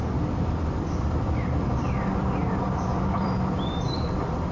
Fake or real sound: fake